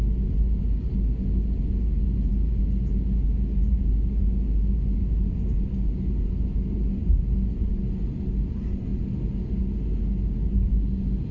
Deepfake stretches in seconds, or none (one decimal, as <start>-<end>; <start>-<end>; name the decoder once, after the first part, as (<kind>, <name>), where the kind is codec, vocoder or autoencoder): 7.0-7.8 (vocoder, BigVGAN v2)